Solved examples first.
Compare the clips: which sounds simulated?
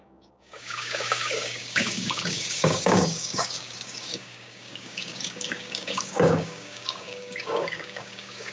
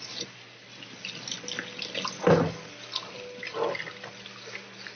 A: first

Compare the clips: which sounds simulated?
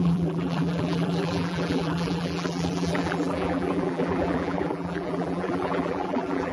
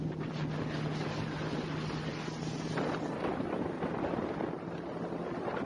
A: first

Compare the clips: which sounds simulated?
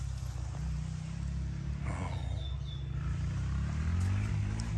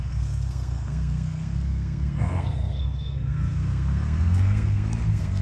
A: second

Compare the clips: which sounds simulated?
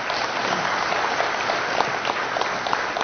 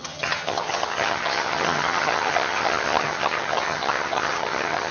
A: second